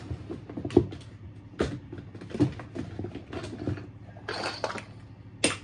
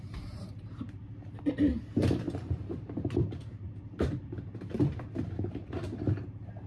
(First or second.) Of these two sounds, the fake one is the second